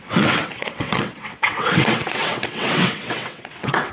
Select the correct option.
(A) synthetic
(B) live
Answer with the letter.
A